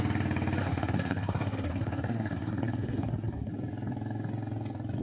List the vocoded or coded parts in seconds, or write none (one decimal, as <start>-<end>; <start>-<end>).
0.6-3.5